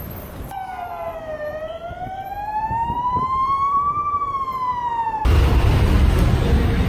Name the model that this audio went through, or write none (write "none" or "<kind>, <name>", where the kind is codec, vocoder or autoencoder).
vocoder, BigVGAN v2